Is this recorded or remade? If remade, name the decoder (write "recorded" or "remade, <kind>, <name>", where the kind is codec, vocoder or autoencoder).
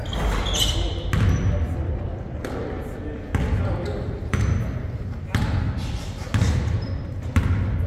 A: recorded